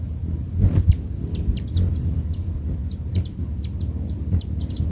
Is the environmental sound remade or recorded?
recorded